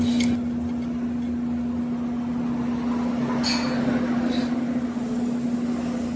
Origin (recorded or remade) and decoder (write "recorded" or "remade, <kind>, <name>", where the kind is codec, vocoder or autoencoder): recorded